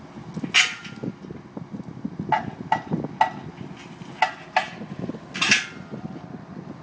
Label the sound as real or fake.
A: real